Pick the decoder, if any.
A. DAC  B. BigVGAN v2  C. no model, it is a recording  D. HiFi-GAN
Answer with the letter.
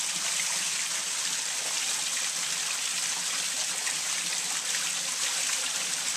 C